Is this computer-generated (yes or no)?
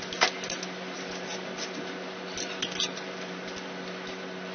no